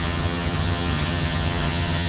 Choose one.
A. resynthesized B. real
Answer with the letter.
A